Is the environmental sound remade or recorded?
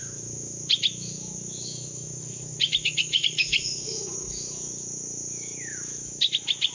remade